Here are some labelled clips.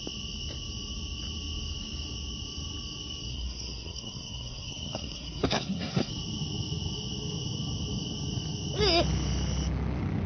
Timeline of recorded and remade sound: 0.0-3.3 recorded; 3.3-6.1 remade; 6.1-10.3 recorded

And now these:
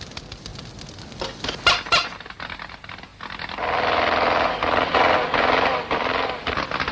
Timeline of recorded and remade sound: 0.0-6.9 recorded

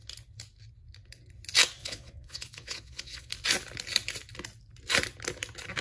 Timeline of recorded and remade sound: 0.0-1.8 recorded; 1.8-3.3 remade; 3.3-5.8 recorded

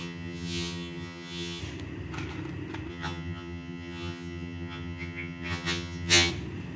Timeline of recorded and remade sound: 0.0-1.6 remade; 1.6-2.9 recorded; 2.9-6.3 remade; 6.3-6.8 recorded

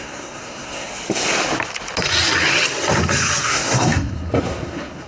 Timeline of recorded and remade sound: 0.0-0.9 remade; 0.9-3.4 recorded; 3.4-5.1 remade

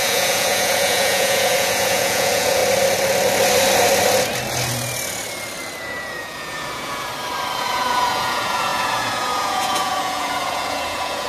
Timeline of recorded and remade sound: 0.0-2.6 remade; 2.6-5.8 recorded; 5.8-7.1 remade; 7.1-7.6 recorded; 7.6-11.3 remade

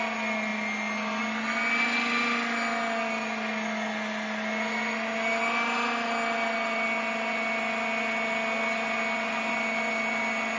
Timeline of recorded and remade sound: 0.0-10.6 recorded